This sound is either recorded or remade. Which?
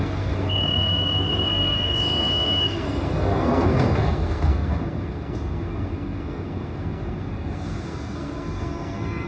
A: remade